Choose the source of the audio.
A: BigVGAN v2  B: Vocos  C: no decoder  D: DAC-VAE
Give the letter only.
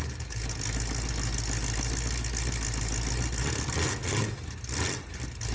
C